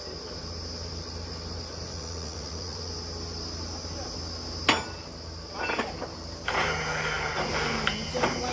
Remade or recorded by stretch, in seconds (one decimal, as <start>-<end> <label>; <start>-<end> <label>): 0.0-1.9 recorded; 1.9-2.9 remade; 2.9-8.5 recorded